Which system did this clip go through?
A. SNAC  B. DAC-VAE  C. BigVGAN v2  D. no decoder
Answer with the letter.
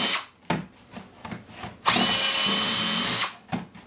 D